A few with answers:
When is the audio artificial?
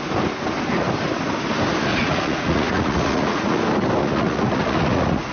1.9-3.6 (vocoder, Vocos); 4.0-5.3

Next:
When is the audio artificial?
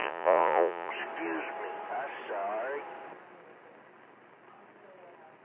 0.0-0.9 (vocoder, Vocos)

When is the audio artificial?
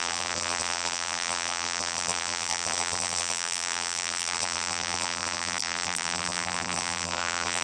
0.0-7.6 (vocoder, BigVGAN v2)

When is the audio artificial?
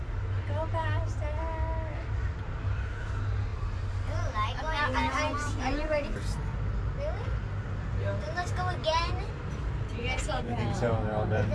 none